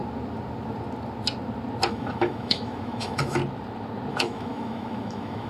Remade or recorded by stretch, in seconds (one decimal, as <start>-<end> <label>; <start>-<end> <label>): 0.0-1.9 recorded; 1.9-3.4 remade; 3.4-4.1 recorded; 4.1-5.5 remade

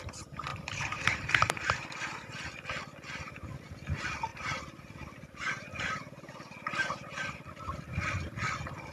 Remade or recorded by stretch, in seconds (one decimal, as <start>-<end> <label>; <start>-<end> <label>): 0.0-0.5 recorded; 0.5-2.5 remade; 2.5-4.3 recorded; 4.3-7.8 remade; 7.8-8.9 recorded

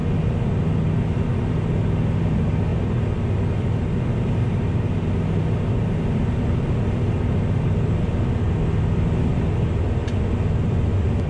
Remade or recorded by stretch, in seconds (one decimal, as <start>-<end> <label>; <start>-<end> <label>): 0.0-11.3 recorded

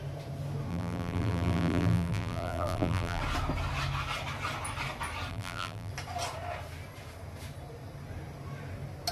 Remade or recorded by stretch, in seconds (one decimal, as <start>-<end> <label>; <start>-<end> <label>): 0.0-0.7 recorded; 0.7-3.2 remade; 3.2-5.3 recorded; 5.3-5.9 remade; 5.9-9.1 recorded

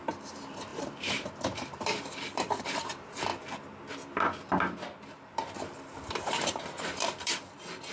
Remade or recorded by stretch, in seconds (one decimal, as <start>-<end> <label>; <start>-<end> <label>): 0.0-3.3 remade; 3.3-5.0 recorded; 5.0-7.9 remade

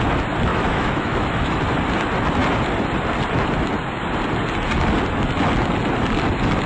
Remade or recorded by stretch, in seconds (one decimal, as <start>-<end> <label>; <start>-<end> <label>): 0.0-0.5 recorded; 0.5-1.6 remade; 1.6-6.7 recorded

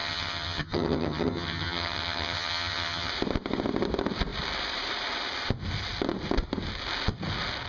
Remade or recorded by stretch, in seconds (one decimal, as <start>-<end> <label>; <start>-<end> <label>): 0.0-3.1 remade; 3.1-7.7 recorded